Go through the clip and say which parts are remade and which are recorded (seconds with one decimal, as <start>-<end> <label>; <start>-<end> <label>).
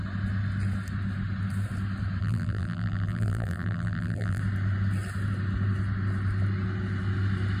0.0-2.2 recorded; 2.2-4.4 remade; 4.4-7.6 recorded